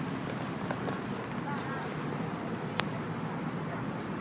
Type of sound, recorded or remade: recorded